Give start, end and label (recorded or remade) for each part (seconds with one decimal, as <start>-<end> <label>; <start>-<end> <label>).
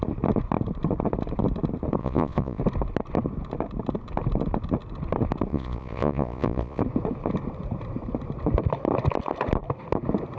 0.0-2.0 recorded; 2.0-2.6 remade; 2.6-5.5 recorded; 5.5-6.8 remade; 6.8-10.4 recorded